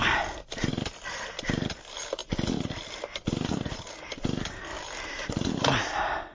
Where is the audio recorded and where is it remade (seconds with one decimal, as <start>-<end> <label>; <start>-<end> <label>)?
0.0-6.3 recorded